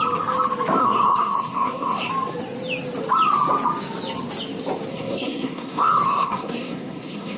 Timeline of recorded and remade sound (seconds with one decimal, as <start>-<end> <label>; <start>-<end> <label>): 0.0-0.8 recorded; 0.8-2.1 remade; 2.1-4.9 recorded; 4.9-7.4 remade